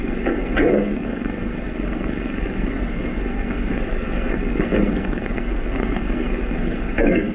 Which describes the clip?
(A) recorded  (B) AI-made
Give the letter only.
B